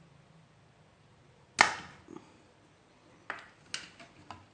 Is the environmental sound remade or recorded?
recorded